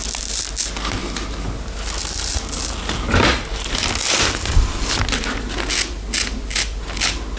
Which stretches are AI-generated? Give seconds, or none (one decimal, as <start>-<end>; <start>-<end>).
none